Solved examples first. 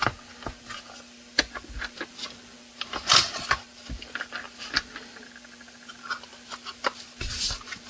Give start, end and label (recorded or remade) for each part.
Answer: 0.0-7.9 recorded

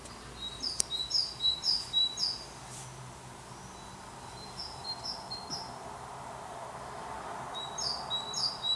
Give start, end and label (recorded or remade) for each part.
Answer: 0.0-8.8 recorded

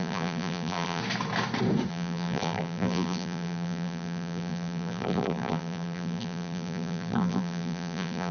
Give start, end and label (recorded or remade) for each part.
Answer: 0.0-1.0 remade; 1.0-1.9 recorded; 1.9-8.3 remade

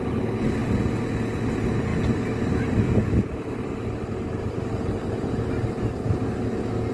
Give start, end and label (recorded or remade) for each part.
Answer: 0.0-6.9 recorded

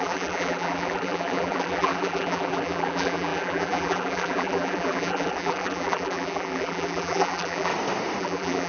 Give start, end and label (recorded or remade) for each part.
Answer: 0.0-7.7 remade; 7.7-8.2 recorded; 8.2-8.7 remade

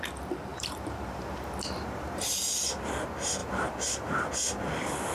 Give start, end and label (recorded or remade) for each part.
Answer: 0.0-0.5 recorded; 0.5-2.9 remade; 2.9-3.4 recorded; 3.4-4.3 remade; 4.3-5.1 recorded